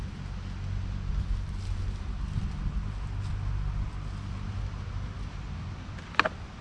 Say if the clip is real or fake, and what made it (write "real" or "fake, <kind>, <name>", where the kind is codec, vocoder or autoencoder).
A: real